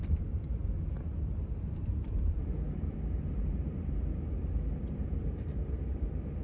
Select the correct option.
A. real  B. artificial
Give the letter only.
B